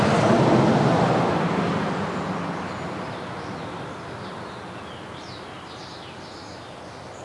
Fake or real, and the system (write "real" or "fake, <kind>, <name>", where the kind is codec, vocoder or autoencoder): real